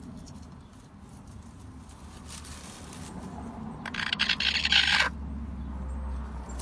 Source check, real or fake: real